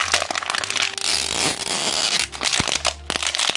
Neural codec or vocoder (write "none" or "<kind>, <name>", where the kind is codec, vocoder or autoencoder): none